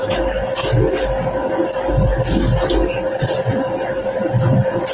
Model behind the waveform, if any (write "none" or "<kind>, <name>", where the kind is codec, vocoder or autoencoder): none